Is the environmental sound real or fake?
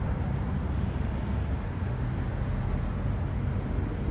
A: real